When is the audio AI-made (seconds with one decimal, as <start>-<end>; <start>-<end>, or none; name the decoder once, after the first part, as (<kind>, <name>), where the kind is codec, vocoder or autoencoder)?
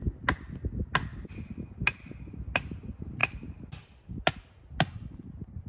none